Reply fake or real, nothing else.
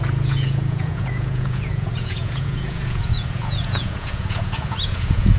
fake